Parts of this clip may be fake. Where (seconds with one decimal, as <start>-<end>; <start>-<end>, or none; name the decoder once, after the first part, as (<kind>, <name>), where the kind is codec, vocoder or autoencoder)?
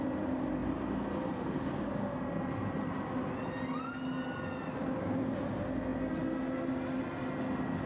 none